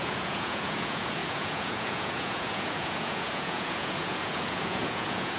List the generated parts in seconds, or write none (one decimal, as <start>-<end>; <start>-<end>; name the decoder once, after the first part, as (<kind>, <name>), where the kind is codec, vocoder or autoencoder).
0.0-5.4 (vocoder, Vocos)

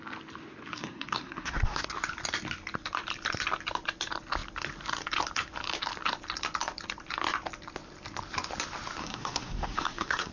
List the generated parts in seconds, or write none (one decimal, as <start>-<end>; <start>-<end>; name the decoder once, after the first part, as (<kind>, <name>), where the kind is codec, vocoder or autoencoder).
0.7-1.8 (codec, SNAC); 9.0-10.3

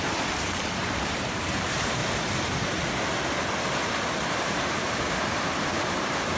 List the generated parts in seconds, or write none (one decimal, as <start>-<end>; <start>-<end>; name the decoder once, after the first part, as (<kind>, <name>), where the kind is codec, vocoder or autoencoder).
0.0-2.0 (vocoder, BigVGAN v2); 3.7-6.4